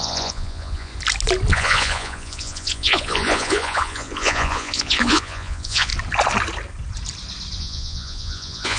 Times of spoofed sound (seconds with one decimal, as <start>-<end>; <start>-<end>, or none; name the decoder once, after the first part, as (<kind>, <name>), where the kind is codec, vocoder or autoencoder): 0.0-0.9 (vocoder, Vocos); 1.5-5.9; 7.6-8.8